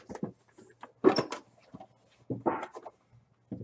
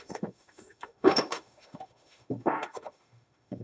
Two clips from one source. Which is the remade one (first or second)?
second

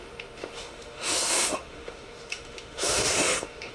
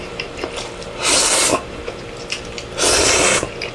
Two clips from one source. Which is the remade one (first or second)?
first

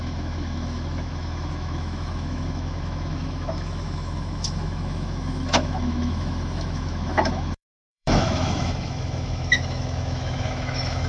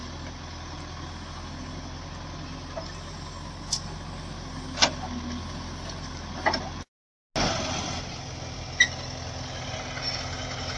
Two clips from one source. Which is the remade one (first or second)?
first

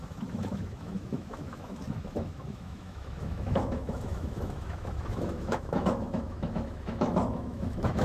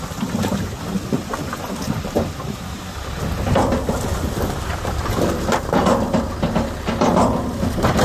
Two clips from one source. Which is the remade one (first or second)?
first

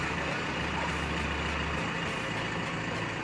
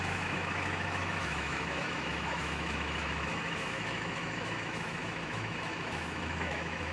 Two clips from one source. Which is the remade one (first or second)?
second